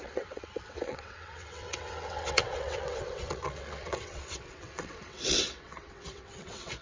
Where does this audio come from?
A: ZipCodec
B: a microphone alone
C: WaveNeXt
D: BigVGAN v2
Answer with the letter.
C